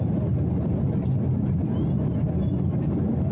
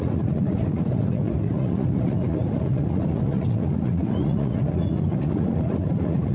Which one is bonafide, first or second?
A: first